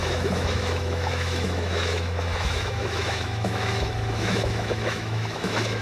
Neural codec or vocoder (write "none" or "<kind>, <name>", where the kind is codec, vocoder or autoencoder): autoencoder, DAC-VAE